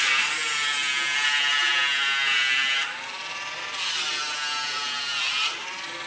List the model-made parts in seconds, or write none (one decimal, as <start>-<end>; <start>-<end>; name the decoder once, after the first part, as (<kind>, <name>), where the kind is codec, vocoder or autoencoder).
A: none